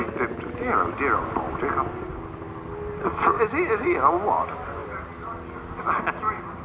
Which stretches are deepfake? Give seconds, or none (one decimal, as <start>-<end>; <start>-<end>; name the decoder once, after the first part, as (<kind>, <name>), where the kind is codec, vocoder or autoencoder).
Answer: none